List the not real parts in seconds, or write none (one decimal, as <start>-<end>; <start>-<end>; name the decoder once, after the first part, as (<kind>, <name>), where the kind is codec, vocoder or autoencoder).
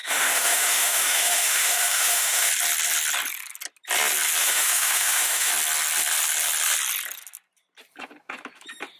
0.0-2.5 (autoencoder, DAC-VAE); 4.4-5.5